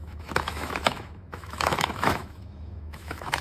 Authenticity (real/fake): fake